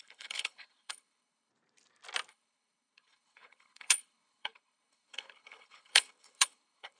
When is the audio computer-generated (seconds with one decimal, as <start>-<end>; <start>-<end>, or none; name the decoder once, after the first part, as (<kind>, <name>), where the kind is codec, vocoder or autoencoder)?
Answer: 0.0-1.5 (codec, HILCodec); 2.3-7.0